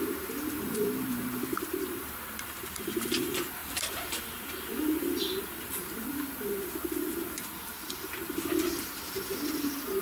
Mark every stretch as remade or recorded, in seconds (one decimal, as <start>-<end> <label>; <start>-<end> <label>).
0.0-10.0 remade